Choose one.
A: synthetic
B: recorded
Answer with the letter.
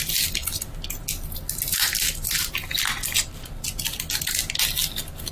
B